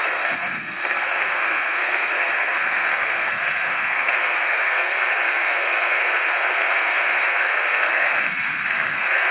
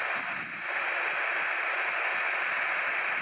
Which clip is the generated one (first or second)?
first